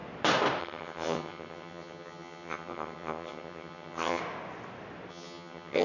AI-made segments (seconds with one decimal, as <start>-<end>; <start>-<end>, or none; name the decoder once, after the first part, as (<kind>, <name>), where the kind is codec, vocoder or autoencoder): 0.6-4.2 (vocoder, HiFi-GAN); 5.1-5.8

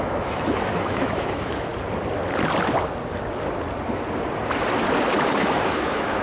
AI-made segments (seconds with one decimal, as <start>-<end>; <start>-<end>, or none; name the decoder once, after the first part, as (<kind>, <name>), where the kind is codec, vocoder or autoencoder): 0.0-1.7 (autoencoder, DAC-VAE); 5.3-6.2

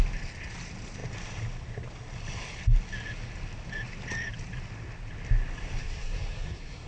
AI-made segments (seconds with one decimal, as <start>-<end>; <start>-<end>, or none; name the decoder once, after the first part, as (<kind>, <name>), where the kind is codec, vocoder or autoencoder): 5.8-6.9 (codec, SNAC)

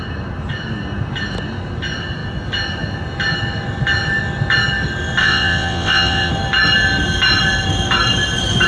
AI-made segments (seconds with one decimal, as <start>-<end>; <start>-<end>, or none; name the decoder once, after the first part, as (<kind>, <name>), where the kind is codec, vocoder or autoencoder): 5.2-6.3 (vocoder, WaveNeXt)

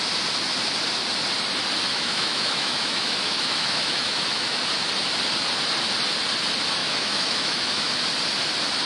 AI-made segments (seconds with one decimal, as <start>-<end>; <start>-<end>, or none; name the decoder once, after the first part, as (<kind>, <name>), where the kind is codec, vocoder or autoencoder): 1.9-4.6 (autoencoder, DAC-VAE); 6.8-7.9